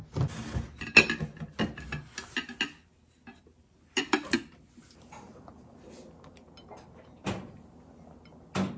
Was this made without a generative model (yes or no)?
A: yes